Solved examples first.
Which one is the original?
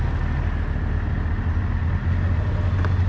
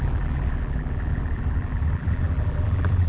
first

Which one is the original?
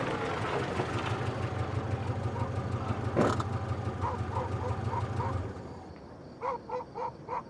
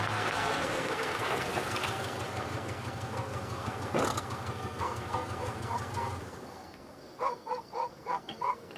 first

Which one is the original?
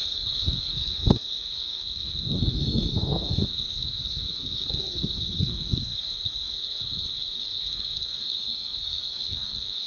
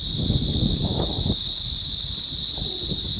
second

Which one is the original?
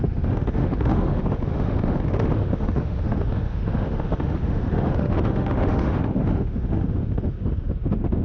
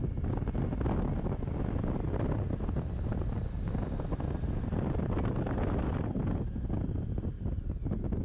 second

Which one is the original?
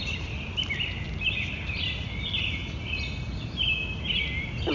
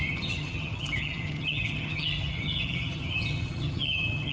first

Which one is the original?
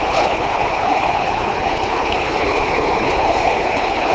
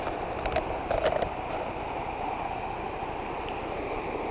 second